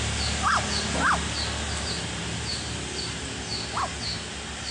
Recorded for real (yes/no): yes